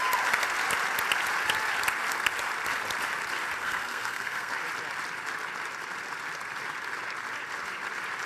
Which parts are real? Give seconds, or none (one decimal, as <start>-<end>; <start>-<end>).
0.0-3.6; 4.5-8.3